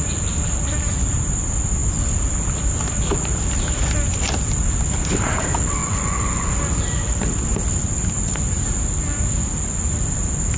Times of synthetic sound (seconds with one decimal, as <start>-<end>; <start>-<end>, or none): 5.8-6.5